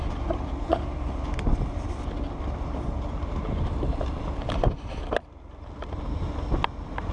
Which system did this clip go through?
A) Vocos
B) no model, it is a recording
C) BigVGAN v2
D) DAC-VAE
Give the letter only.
B